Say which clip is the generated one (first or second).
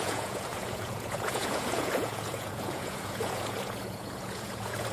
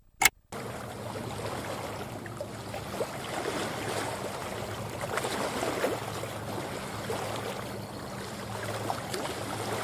first